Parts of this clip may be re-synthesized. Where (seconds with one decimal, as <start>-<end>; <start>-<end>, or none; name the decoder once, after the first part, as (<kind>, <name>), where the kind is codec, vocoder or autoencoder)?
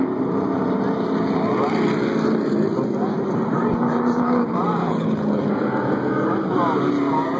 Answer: 4.8-5.5 (codec, HILCodec)